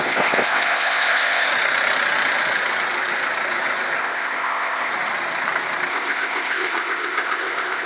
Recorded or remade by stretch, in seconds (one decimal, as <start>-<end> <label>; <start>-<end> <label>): 0.0-1.5 remade; 1.5-4.0 recorded; 4.0-4.9 remade; 4.9-5.9 recorded; 5.9-7.9 remade